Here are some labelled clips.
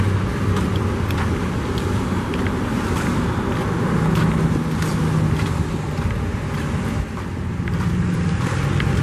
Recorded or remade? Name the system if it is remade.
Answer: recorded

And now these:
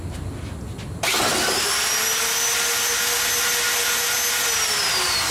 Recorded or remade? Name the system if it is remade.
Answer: recorded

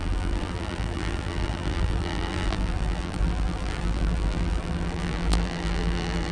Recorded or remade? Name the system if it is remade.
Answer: remade, vocoder, BigVGAN v2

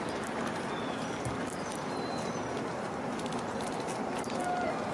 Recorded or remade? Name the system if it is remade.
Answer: recorded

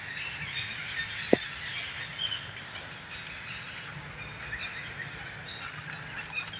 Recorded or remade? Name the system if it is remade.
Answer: recorded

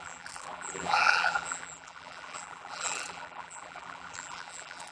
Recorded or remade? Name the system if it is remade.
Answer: remade, vocoder, BigVGAN v2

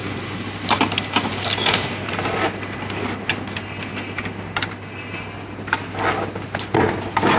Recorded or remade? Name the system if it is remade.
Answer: recorded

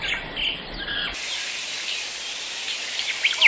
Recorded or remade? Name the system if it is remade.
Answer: recorded